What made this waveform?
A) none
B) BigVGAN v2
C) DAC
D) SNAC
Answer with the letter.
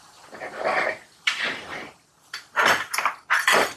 B